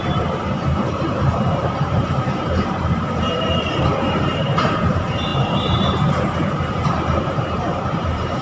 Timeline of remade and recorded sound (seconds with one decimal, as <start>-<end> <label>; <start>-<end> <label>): 0.0-8.4 remade